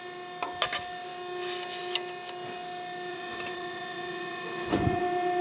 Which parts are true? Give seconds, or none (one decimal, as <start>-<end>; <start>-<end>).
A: 0.0-3.1; 5.0-5.4